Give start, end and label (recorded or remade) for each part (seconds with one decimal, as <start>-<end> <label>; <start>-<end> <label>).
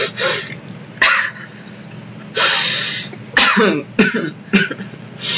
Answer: 0.0-5.4 recorded